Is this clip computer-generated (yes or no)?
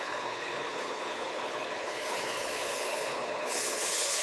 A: yes